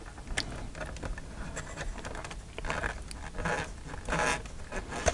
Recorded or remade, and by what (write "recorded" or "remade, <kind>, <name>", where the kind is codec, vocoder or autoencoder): recorded